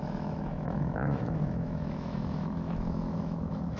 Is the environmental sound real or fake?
fake